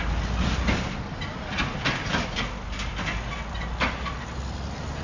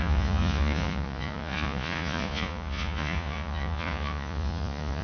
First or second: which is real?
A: first